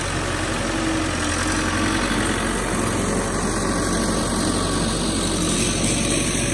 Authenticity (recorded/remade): recorded